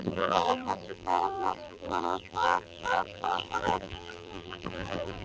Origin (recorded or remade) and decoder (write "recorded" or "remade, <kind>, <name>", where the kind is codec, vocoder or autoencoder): remade, vocoder, BigVGAN v2